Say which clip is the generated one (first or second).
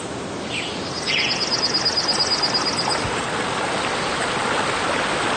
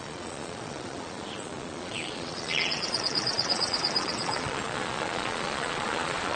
second